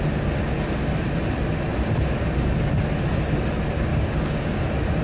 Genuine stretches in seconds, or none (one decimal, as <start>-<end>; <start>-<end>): 0.0-3.9; 4.6-5.0

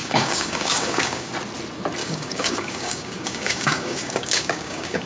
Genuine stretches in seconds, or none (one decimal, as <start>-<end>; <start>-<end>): 1.3-2.0